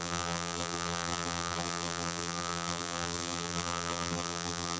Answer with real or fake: fake